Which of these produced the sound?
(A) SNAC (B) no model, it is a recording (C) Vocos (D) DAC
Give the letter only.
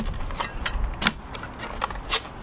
B